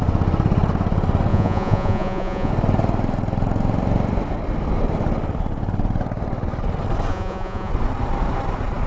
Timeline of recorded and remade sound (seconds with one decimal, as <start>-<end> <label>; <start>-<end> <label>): 0.0-1.3 recorded; 1.3-2.5 remade; 2.5-7.1 recorded; 7.1-7.7 remade; 7.7-8.9 recorded